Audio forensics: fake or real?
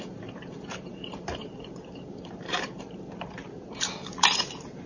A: fake